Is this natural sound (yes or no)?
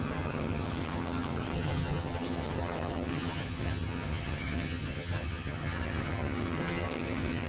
no